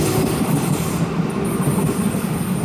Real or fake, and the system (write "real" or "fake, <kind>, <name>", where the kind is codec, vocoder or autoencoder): real